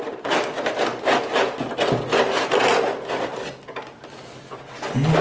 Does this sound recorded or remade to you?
recorded